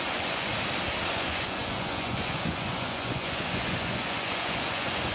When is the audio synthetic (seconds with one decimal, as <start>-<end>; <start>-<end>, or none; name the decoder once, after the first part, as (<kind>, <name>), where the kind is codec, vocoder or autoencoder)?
0.0-0.5 (vocoder, Vocos); 1.1-5.1